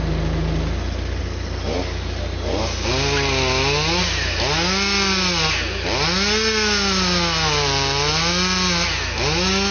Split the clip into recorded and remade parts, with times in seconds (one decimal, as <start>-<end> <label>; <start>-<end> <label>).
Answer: 0.0-9.7 recorded